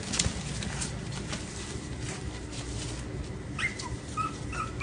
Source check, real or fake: real